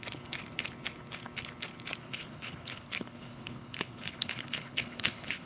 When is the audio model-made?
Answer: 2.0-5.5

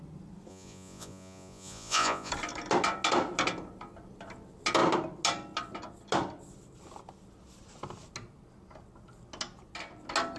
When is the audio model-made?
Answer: 0.5-2.3

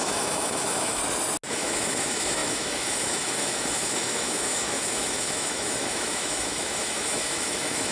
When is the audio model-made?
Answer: 0.0-1.0; 1.5-7.9

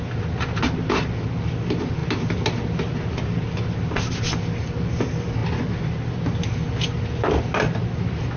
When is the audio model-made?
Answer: none

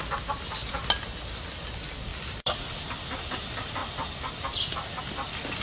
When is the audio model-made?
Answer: 2.1-3.1

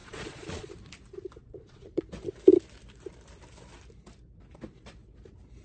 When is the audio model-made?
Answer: 0.0-0.7; 1.4-2.0

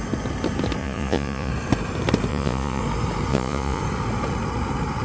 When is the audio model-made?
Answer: 0.8-1.5; 2.3-2.8; 3.3-3.8

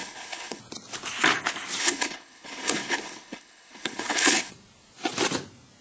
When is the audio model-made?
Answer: 0.0-0.6; 1.8-4.5